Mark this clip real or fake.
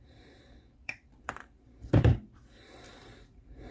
fake